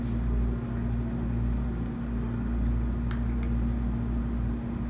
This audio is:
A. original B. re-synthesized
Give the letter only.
A